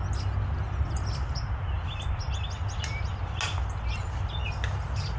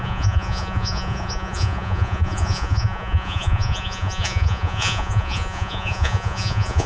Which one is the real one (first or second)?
first